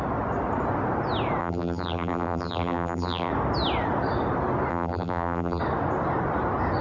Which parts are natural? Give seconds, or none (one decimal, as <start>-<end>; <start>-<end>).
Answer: 0.0-1.4; 3.3-4.7; 5.6-6.8